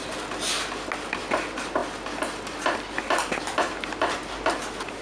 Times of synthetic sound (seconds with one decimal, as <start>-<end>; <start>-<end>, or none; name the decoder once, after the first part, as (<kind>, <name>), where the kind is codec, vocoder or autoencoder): none